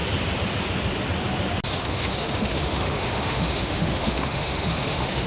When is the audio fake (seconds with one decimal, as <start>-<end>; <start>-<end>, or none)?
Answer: 1.7-5.3